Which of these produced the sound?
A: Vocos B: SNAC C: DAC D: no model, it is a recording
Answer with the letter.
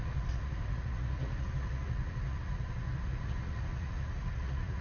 A